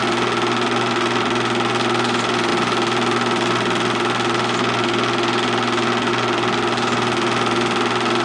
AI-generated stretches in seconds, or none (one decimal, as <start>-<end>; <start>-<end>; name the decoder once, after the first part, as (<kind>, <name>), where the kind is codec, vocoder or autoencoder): none

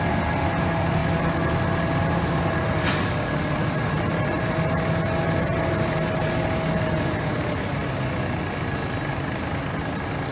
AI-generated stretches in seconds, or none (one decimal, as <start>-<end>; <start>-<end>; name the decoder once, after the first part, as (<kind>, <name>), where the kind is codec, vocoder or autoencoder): none